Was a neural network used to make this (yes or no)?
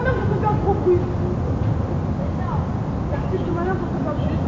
no